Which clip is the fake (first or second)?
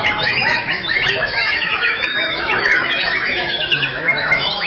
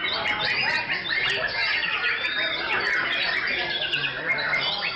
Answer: first